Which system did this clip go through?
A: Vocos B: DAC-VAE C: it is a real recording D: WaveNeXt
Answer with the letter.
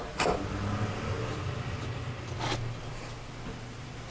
C